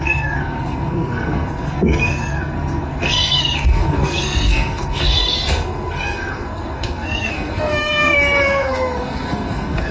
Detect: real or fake fake